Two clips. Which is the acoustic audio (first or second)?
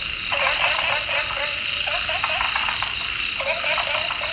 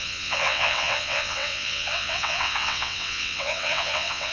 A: first